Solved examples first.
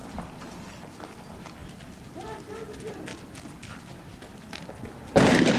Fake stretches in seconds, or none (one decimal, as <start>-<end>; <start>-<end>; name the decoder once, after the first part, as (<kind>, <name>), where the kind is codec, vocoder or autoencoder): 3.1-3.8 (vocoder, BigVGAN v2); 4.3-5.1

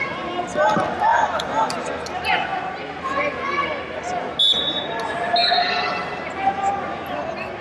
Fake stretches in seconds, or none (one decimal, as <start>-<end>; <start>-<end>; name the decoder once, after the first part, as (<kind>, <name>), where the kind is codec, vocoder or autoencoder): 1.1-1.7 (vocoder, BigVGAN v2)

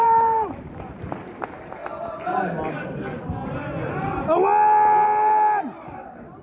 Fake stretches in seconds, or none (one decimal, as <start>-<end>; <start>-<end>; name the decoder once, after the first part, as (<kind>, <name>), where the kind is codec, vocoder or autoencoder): 0.0-1.8 (vocoder, BigVGAN v2); 5.6-6.4

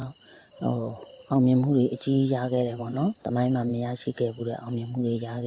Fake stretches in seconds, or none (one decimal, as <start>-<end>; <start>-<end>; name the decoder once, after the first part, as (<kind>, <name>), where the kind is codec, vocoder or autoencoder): 0.0-3.7 (vocoder, BigVGAN v2); 4.4-5.5

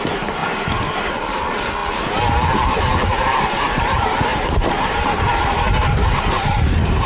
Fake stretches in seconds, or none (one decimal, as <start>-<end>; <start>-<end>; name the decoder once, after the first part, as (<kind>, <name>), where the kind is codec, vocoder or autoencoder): 0.0-1.8 (vocoder, BigVGAN v2); 2.7-7.1

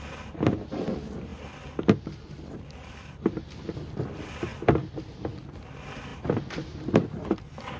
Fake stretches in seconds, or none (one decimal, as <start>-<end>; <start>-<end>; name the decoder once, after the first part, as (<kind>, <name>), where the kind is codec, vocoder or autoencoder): none

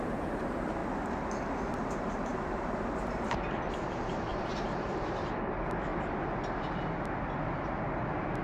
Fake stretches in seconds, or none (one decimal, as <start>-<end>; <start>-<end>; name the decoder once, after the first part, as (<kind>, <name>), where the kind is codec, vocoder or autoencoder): 0.0-0.8 (vocoder, BigVGAN v2); 1.7-2.3; 3.9-5.9